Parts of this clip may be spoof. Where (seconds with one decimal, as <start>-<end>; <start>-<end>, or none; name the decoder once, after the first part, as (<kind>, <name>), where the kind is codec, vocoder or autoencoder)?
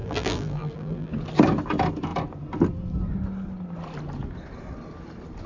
0.0-1.1 (vocoder, BigVGAN v2)